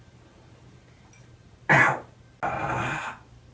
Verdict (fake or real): real